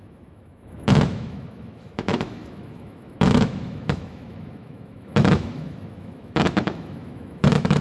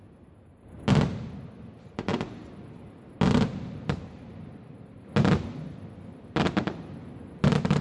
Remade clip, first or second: first